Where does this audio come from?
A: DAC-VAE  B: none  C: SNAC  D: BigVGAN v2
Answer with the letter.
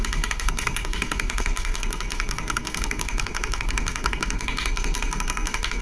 C